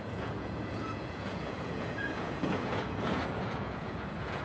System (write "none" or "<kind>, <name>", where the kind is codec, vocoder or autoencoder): vocoder, Vocos